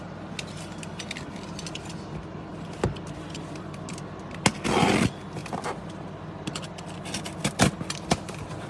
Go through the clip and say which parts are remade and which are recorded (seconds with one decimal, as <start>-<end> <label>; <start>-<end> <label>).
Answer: 0.0-8.7 recorded